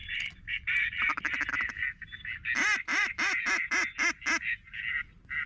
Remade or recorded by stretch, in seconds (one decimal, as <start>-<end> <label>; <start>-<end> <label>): 0.0-1.5 remade; 1.5-2.9 recorded; 2.9-3.5 remade; 3.5-5.5 recorded